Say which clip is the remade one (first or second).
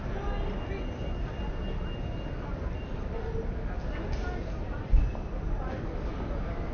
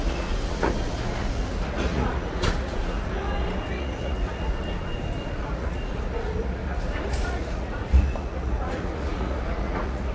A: second